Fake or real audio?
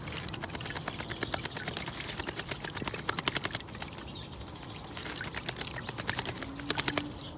real